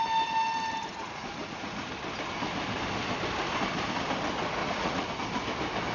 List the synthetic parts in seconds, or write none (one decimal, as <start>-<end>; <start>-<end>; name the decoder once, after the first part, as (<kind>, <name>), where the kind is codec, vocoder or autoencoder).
0.8-1.9 (vocoder, Vocos); 4.6-5.1